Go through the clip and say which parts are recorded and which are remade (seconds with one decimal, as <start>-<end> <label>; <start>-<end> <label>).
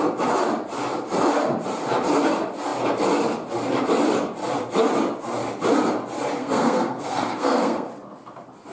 0.0-6.4 recorded; 6.4-7.9 remade; 7.9-8.7 recorded